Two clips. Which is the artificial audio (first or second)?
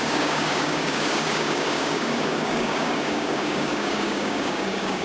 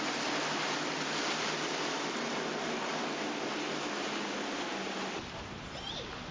first